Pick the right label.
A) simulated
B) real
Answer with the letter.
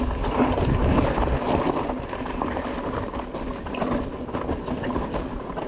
B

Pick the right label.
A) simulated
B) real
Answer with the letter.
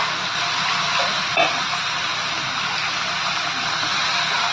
B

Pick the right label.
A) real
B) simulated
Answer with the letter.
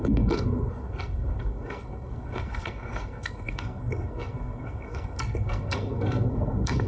B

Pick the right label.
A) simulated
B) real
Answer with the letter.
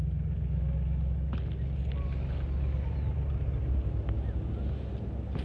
B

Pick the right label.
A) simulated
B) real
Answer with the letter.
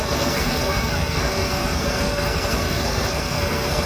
A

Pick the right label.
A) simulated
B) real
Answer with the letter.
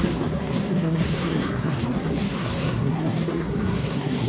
A